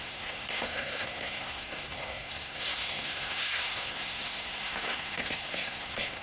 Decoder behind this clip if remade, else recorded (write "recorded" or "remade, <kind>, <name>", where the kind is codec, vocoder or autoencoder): remade, codec, SNAC